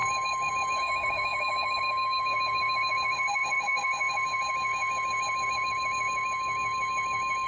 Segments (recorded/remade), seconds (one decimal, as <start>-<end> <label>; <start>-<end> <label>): 0.0-7.5 remade

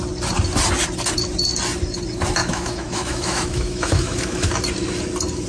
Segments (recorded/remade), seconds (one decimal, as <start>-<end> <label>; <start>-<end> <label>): 0.0-2.4 recorded; 2.4-4.5 remade; 4.5-5.5 recorded

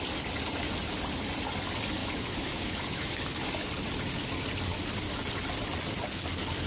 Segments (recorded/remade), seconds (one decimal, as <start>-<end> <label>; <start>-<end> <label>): 0.0-2.0 recorded; 2.0-3.7 remade; 3.7-6.7 recorded

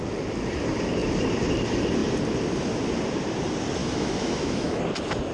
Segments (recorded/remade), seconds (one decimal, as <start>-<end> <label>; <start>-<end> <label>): 0.0-3.8 recorded; 3.8-4.8 remade; 4.8-5.3 recorded